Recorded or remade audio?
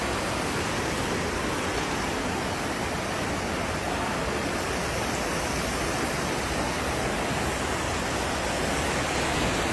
recorded